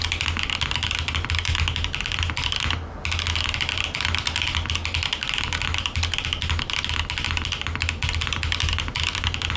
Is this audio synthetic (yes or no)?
no